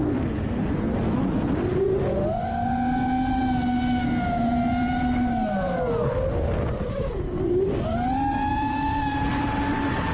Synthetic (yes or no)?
no